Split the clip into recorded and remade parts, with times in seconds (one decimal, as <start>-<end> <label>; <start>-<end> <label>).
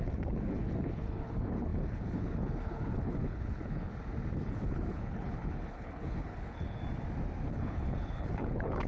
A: 0.0-3.9 remade; 3.9-4.4 recorded; 4.4-6.8 remade; 6.8-7.5 recorded; 7.5-8.9 remade